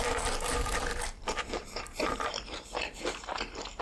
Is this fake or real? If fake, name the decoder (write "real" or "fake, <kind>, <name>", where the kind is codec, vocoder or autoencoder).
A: fake, vocoder, BigVGAN v2